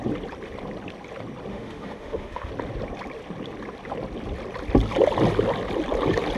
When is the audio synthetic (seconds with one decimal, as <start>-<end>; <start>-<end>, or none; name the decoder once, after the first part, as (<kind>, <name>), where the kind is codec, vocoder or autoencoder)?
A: 1.5-2.5 (autoencoder, DAC-VAE)